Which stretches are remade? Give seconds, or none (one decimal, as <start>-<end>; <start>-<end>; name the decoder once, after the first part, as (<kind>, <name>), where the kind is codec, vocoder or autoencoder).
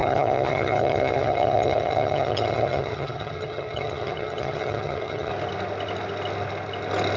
0.0-5.3 (vocoder, HiFi-GAN)